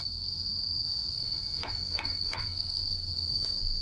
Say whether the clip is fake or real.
fake